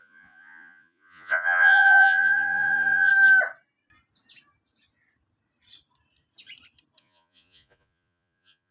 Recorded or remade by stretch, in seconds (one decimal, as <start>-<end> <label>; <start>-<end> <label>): 0.0-3.1 remade; 3.1-7.0 recorded; 7.0-8.7 remade